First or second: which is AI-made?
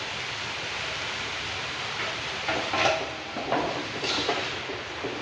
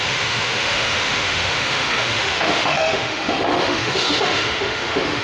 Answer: second